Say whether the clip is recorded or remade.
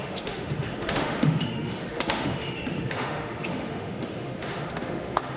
remade